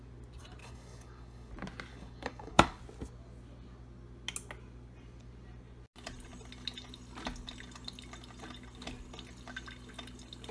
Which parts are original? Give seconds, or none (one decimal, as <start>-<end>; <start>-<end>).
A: 0.0-0.6; 1.5-1.9; 2.8-10.5